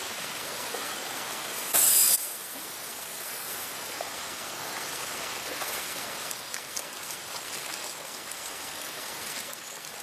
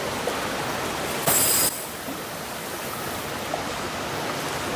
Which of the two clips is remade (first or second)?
first